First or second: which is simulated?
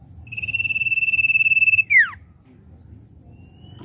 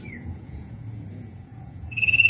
second